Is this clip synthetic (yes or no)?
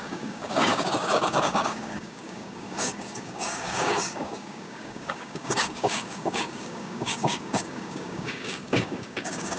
yes